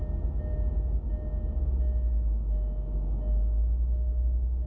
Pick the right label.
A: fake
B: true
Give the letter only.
B